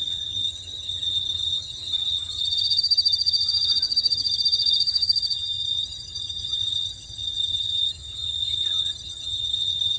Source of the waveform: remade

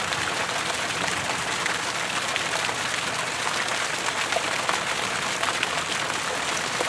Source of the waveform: recorded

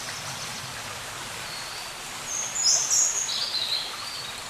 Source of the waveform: recorded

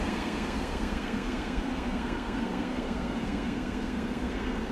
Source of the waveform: remade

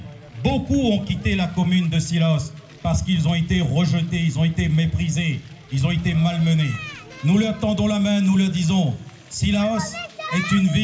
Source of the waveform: recorded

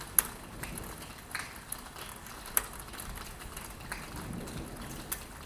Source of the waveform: recorded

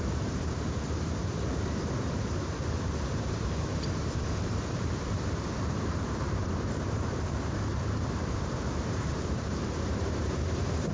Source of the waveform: remade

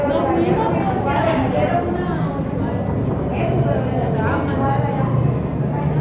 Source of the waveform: recorded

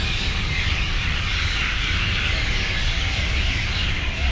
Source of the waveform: remade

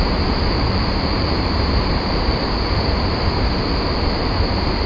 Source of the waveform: remade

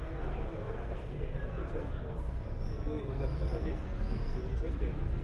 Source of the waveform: remade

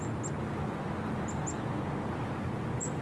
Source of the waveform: recorded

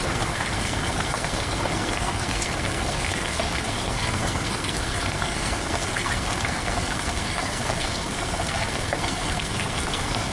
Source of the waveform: remade